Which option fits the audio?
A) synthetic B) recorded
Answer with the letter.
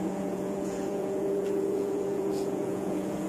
A